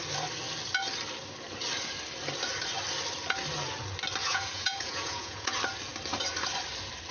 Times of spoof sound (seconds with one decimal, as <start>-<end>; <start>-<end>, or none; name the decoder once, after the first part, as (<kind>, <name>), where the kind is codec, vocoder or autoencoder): 4.2-5.5 (vocoder, Vocos)